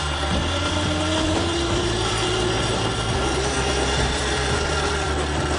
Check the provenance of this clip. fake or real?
real